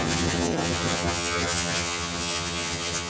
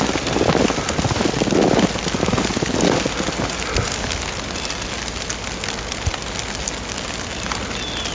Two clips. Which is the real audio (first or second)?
second